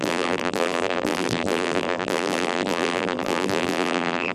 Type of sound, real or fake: fake